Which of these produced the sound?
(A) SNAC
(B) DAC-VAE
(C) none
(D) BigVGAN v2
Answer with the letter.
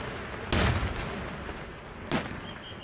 C